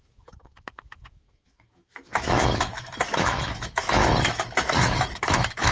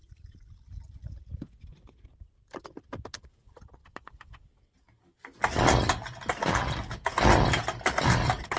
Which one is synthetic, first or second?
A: first